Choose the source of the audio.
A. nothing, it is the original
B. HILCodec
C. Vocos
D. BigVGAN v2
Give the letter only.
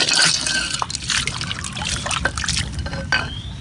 A